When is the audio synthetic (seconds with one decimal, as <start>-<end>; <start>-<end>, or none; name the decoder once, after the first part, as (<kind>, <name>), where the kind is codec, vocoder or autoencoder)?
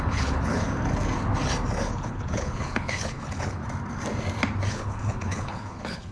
0.0-0.6 (codec, HILCodec); 1.9-3.6; 4.7-6.1